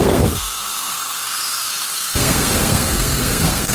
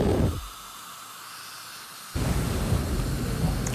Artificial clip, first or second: first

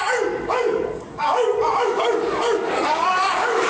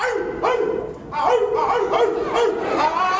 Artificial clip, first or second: first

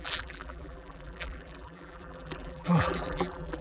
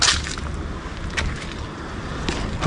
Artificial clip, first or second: first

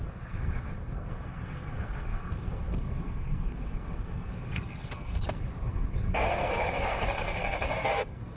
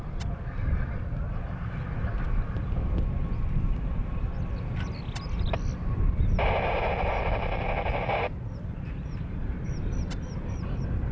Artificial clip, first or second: first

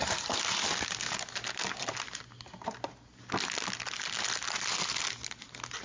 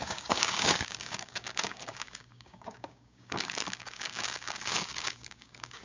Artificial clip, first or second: second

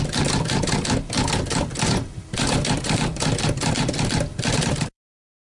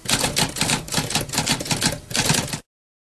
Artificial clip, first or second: first